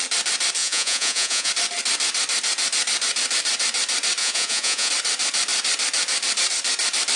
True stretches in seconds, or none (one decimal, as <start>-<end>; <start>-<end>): 0.0-0.6; 1.5-4.2; 4.9-7.2